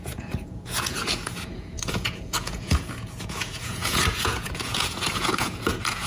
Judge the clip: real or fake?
fake